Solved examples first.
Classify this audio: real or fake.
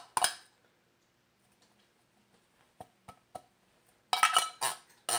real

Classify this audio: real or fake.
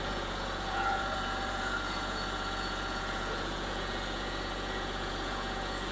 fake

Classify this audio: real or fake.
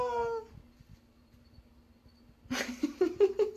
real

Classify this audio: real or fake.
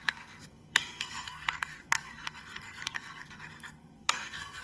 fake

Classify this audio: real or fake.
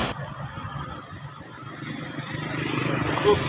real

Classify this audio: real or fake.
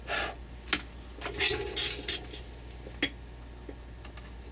real